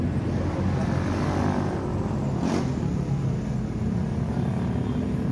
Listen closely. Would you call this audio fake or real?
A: real